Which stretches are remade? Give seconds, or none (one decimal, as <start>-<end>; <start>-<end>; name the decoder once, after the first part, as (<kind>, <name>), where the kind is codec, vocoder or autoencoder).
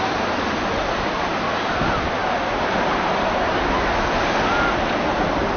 none